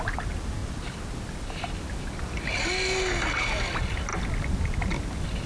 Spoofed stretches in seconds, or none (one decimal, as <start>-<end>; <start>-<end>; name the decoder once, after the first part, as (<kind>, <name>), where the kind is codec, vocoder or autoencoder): none